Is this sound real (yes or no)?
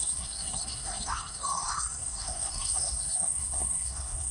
no